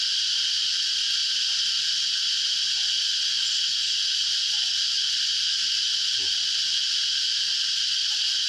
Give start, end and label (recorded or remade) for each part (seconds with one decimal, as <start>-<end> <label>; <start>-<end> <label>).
0.0-6.0 recorded; 6.0-8.5 remade